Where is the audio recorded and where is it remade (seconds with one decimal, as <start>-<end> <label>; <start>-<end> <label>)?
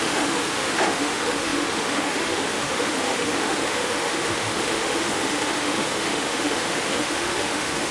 0.0-7.9 remade